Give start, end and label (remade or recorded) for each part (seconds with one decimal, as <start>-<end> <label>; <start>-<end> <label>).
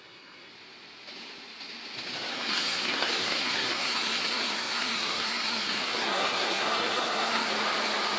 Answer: 0.0-0.5 remade; 0.5-2.3 recorded; 2.3-7.5 remade; 7.5-8.2 recorded